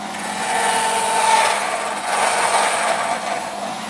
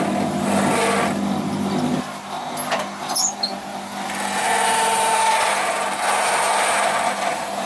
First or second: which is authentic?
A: second